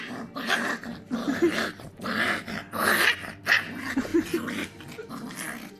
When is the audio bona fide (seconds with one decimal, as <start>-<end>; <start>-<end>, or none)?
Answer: 0.0-5.8